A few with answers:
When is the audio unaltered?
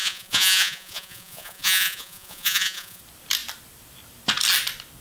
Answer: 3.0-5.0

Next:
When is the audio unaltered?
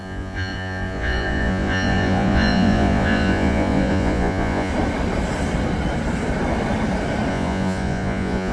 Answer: 4.7-7.3